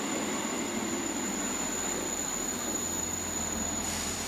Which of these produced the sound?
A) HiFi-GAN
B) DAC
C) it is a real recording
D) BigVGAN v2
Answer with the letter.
D